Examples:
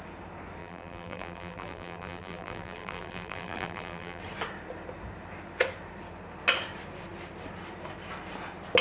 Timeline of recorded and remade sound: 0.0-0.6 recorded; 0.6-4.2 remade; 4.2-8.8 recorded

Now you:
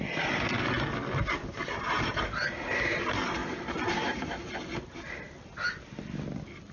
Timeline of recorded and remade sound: 0.0-1.4 recorded; 1.4-2.1 remade; 2.1-3.4 recorded; 3.4-4.0 remade; 4.0-6.7 recorded